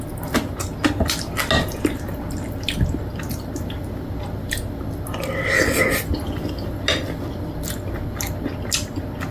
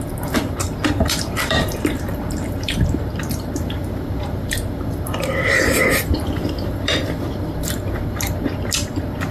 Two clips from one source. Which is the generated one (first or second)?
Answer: second